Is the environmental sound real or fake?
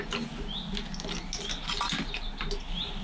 real